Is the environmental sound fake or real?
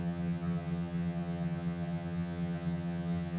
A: fake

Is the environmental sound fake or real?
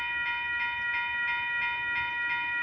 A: real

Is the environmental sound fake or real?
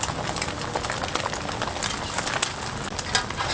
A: real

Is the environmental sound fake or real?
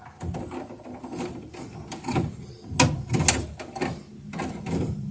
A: real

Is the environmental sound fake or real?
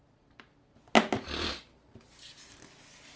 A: real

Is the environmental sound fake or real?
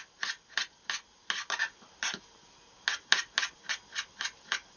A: real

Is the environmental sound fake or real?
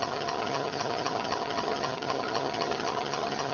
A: fake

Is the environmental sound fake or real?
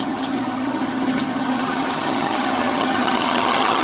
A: fake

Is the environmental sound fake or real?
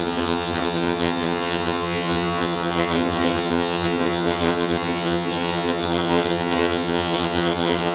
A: fake